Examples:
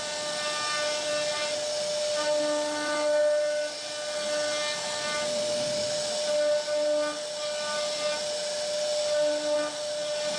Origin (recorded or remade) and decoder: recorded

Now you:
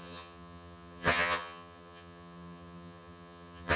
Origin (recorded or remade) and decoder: remade, vocoder, HiFi-GAN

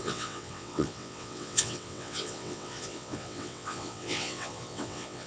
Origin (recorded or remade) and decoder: remade, vocoder, WaveNeXt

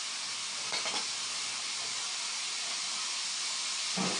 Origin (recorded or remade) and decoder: recorded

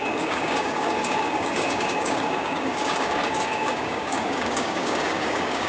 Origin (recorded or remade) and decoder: remade, codec, DAC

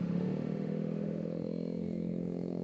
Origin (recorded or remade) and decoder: remade, autoencoder, DAC-VAE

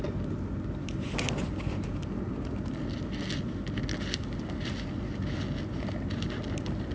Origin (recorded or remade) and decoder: recorded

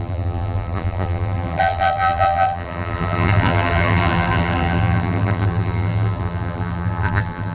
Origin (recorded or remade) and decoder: remade, vocoder, BigVGAN v2